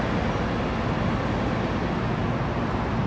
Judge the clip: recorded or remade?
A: recorded